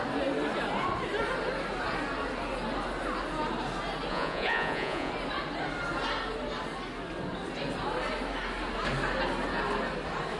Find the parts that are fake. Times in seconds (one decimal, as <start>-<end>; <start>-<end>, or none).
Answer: 4.1-5.1